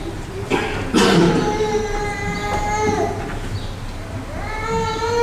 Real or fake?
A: real